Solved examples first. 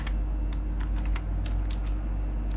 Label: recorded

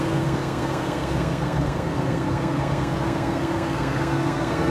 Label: remade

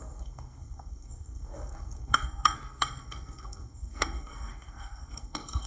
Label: remade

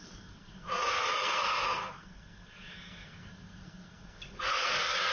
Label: remade